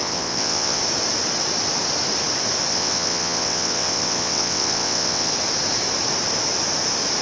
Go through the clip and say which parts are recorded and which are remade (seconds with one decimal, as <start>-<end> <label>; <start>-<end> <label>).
0.0-0.8 remade; 0.8-2.7 recorded; 2.7-5.3 remade; 5.3-7.2 recorded